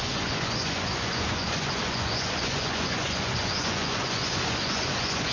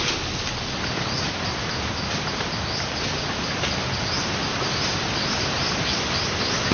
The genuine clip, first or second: second